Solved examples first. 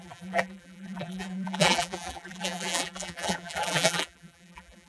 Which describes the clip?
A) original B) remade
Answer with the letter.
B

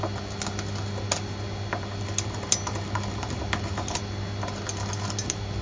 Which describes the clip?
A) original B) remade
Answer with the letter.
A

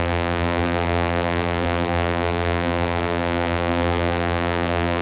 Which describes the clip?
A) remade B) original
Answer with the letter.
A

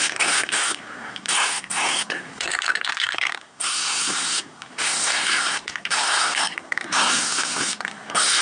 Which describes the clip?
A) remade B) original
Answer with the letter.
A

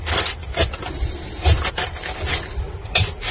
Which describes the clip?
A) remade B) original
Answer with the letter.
B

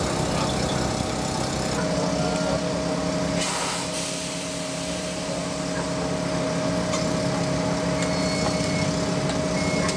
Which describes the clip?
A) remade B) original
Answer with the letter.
B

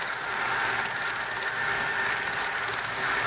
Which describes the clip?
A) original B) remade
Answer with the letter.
A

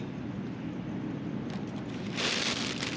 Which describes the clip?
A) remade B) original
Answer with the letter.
B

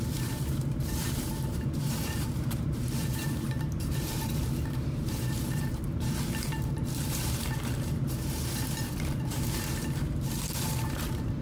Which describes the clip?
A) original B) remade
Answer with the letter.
B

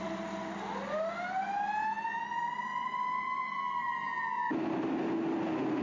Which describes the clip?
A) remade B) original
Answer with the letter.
B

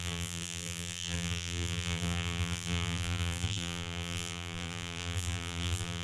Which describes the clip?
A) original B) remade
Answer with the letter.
B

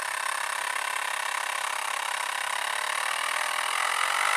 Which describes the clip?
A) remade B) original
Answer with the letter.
B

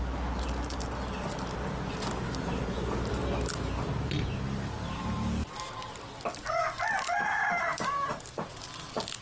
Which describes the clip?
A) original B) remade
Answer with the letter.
A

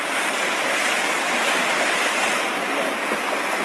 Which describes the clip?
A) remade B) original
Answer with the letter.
B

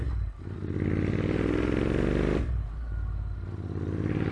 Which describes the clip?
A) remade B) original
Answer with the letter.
B